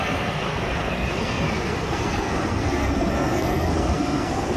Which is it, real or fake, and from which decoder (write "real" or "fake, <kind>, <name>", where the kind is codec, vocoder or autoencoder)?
fake, codec, SNAC